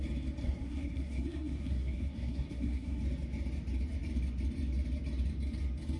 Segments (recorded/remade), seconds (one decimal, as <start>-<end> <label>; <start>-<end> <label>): 0.0-0.4 recorded; 0.4-3.0 remade; 3.0-6.0 recorded